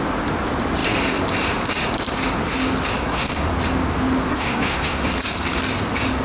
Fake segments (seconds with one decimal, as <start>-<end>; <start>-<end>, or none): 3.0-3.5; 4.3-5.1